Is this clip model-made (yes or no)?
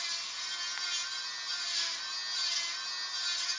no